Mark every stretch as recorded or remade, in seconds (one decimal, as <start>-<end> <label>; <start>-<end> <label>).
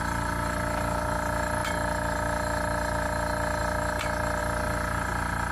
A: 0.0-5.5 recorded